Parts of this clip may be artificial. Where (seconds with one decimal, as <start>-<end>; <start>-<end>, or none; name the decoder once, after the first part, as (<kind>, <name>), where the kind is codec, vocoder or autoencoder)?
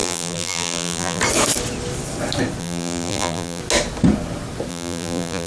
0.0-1.2 (vocoder, BigVGAN v2); 2.6-3.6; 4.7-5.5